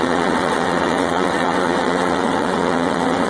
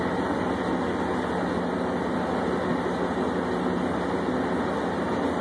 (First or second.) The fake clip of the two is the first